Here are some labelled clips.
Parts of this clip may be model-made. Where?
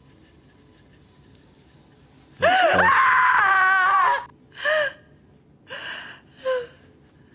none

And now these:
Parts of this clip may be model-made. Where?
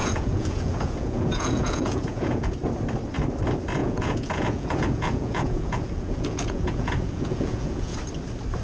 0.0-2.5; 3.8-8.0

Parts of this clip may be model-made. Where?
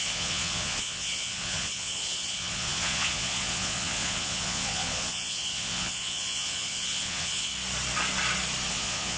0.0-7.5; 8.7-9.2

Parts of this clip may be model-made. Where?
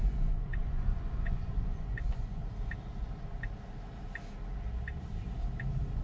0.0-2.4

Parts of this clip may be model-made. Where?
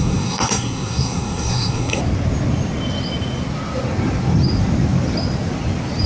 0.0-2.0